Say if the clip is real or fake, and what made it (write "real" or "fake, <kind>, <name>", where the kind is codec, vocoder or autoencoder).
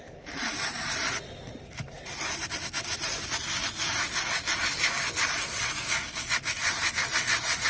real